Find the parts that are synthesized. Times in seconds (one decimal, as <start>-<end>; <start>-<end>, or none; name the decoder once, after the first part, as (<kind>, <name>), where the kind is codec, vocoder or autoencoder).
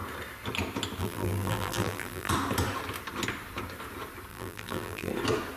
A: 1.0-2.3 (vocoder, BigVGAN v2); 4.3-5.1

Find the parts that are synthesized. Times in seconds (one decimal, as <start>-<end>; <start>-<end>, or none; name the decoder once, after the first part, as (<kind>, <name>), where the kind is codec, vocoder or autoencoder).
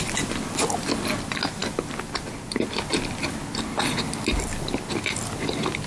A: none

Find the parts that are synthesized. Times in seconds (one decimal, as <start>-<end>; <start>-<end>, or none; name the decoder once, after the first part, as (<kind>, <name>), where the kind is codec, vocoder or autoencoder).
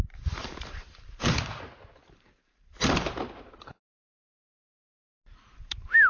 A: 0.4-3.1 (vocoder, BigVGAN v2)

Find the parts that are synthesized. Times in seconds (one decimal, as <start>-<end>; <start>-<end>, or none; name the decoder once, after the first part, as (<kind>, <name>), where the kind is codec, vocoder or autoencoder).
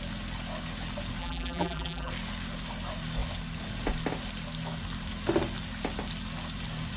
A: 1.2-2.1 (vocoder, BigVGAN v2)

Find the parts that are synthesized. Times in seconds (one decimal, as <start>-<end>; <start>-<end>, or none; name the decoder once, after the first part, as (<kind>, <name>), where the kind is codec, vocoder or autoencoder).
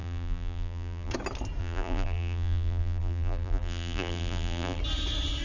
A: 0.0-1.1 (vocoder, BigVGAN v2); 1.6-4.8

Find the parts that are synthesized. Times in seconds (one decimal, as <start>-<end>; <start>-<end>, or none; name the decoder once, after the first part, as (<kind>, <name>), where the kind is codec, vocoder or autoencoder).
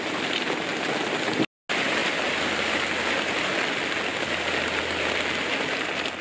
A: none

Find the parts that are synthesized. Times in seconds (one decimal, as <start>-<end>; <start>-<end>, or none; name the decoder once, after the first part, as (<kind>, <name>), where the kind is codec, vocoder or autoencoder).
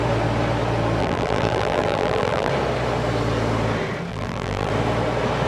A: 1.0-2.5 (vocoder, BigVGAN v2); 4.1-4.7